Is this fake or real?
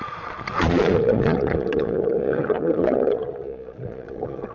fake